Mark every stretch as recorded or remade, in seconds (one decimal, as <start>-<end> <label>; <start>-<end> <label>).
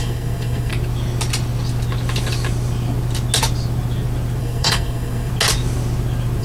0.0-0.7 remade; 0.7-4.4 recorded; 4.4-5.3 remade; 5.3-6.4 recorded